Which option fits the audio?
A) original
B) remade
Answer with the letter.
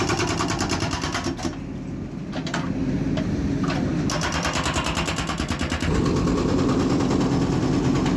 A